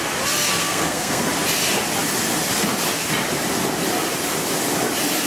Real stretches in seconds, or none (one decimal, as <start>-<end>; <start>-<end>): 0.0-0.6; 1.2-5.3